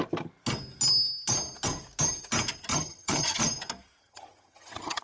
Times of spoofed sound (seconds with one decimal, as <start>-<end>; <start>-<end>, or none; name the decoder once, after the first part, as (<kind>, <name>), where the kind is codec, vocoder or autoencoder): 2.7-3.4 (vocoder, HiFi-GAN); 4.0-5.0